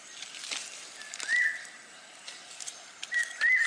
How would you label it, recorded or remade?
recorded